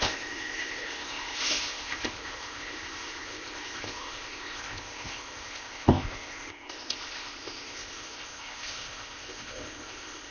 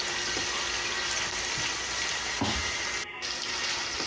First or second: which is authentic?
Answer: second